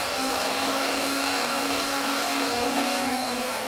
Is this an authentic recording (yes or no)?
no